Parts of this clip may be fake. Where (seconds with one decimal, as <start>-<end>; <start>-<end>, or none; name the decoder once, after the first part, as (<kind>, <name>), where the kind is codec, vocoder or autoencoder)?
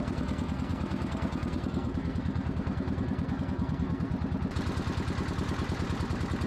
0.0-4.1 (codec, SNAC)